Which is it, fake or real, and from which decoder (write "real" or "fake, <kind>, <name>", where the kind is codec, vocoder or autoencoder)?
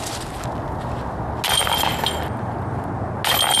real